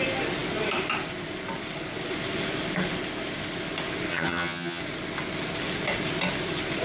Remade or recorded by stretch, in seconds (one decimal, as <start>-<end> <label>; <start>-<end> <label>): 0.0-4.1 recorded; 4.1-4.8 remade; 4.8-6.8 recorded